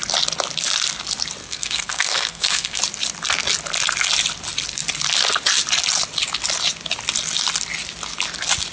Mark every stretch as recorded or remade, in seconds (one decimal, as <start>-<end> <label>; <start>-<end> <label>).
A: 0.0-1.4 recorded; 1.4-2.8 remade; 2.8-8.7 recorded